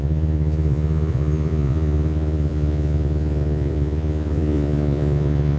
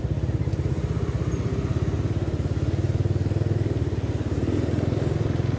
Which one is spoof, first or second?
first